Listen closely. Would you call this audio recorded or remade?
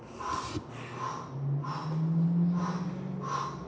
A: recorded